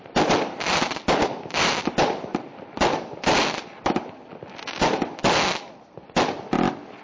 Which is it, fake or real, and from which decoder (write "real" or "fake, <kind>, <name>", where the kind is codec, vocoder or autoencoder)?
real